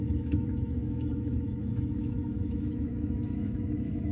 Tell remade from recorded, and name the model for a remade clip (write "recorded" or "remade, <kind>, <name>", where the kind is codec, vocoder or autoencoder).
remade, autoencoder, DAC-VAE